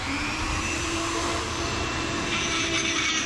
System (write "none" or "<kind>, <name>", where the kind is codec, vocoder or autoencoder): vocoder, BigVGAN v2